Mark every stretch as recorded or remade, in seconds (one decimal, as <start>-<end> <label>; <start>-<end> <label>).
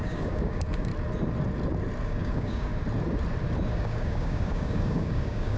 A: 0.0-0.9 remade; 0.9-2.1 recorded; 2.1-2.7 remade; 2.7-3.7 recorded; 3.7-5.6 remade